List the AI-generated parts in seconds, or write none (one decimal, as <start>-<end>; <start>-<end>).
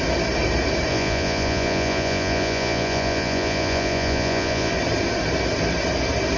0.9-4.7